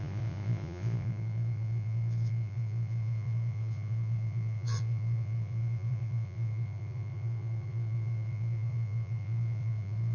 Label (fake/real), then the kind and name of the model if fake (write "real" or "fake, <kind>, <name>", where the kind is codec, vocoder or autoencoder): fake, vocoder, Vocos